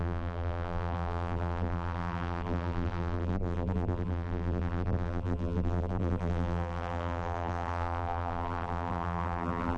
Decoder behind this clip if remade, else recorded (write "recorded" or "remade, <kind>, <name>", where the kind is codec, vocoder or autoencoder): remade, vocoder, BigVGAN v2